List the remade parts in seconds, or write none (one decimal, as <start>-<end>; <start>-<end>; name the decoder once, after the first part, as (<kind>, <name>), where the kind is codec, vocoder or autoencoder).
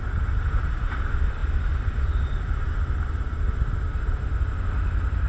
none